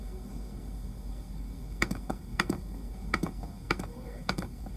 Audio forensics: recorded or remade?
remade